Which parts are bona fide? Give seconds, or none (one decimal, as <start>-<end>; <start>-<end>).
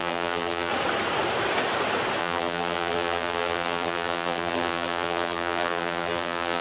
0.7-2.2